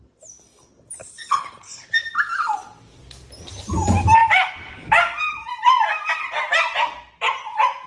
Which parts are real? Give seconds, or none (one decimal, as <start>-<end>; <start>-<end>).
0.0-1.0; 1.9-7.9